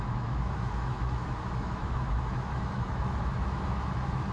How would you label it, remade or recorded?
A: remade